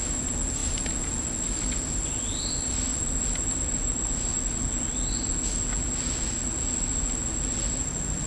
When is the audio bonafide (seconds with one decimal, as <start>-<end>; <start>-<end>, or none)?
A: 0.0-8.3

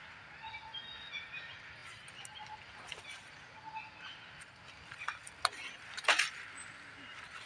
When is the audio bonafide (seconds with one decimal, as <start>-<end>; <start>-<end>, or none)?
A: 0.0-7.5

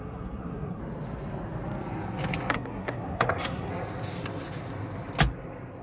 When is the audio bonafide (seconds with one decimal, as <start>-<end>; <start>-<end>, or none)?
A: 0.8-2.5; 3.7-5.8

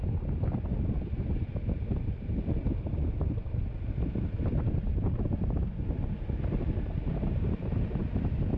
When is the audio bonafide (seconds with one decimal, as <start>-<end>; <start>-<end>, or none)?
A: 0.0-8.6